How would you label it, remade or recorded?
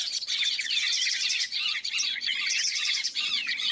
remade